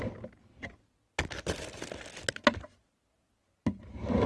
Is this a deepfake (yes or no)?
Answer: no